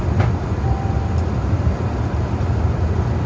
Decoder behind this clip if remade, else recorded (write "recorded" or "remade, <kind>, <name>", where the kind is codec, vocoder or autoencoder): recorded